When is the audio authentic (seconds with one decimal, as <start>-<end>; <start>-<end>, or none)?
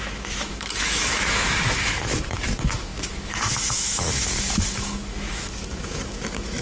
none